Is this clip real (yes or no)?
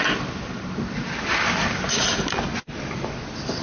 yes